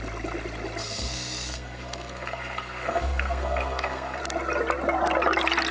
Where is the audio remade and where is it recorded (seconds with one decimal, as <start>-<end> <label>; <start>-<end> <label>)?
0.0-0.8 recorded; 0.8-4.2 remade; 4.2-5.7 recorded